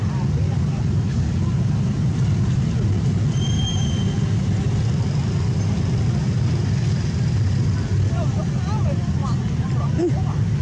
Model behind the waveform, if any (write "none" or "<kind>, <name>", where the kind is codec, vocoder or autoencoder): none